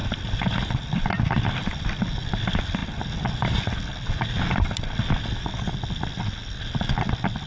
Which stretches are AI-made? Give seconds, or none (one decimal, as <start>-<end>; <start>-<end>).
0.0-2.0; 2.8-3.3